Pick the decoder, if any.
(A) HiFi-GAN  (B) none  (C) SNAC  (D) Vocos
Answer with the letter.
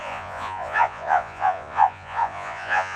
D